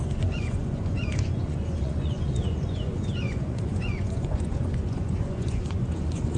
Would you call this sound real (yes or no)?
no